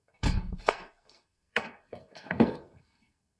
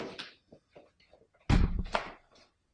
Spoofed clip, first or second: first